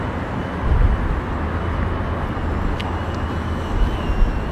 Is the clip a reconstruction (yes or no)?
no